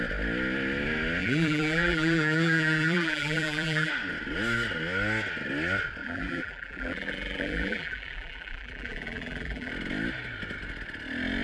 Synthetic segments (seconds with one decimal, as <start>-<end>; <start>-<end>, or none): 1.2-3.9; 6.0-9.7